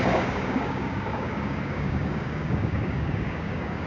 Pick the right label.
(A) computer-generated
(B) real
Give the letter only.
A